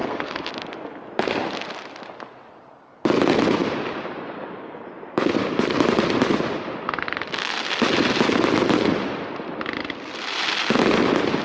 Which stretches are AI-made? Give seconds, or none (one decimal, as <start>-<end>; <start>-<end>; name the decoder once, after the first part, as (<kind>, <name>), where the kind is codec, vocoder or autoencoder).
0.0-0.5 (codec, SNAC)